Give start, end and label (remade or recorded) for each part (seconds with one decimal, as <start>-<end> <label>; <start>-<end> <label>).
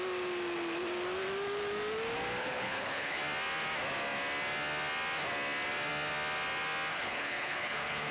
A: 0.0-2.4 recorded; 2.4-3.2 remade; 3.2-6.9 recorded; 6.9-8.1 remade